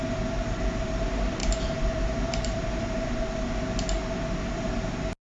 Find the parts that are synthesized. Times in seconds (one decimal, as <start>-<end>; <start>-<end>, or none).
1.4-2.8